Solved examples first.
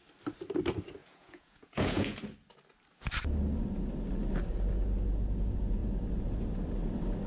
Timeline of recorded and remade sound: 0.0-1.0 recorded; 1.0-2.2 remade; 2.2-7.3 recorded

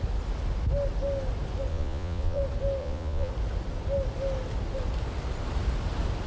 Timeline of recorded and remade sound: 0.0-1.7 recorded; 1.7-2.4 remade; 2.4-2.8 recorded; 2.8-3.3 remade; 3.3-6.3 recorded

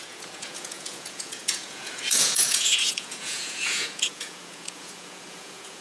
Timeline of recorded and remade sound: 0.0-5.8 remade

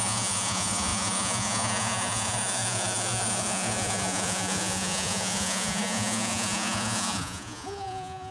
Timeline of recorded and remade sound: 0.0-8.3 remade

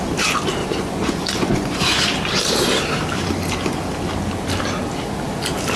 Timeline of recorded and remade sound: 0.0-0.6 recorded; 0.6-2.1 remade; 2.1-5.8 recorded

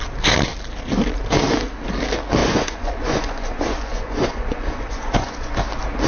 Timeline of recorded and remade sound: 0.0-2.4 recorded; 2.4-5.5 remade; 5.5-6.1 recorded

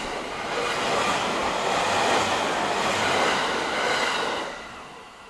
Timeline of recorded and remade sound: 0.0-5.3 recorded